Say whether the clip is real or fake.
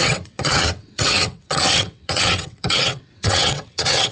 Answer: fake